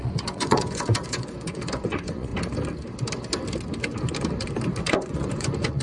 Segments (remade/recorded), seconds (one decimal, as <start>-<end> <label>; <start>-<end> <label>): 0.0-2.3 remade; 2.3-4.8 recorded; 4.8-5.8 remade